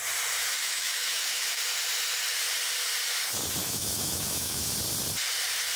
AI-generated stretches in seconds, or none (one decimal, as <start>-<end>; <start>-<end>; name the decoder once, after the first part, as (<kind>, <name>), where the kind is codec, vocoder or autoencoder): 0.5-1.6 (autoencoder, DAC-VAE); 3.6-4.7